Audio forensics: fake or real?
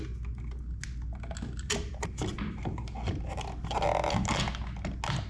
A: real